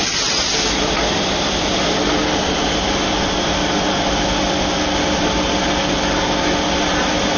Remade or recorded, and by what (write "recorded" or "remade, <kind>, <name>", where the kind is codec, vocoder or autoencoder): recorded